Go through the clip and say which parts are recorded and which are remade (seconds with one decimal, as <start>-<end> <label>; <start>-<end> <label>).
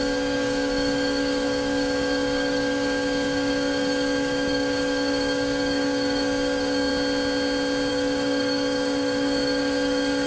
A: 0.0-6.9 remade; 6.9-7.9 recorded; 7.9-10.3 remade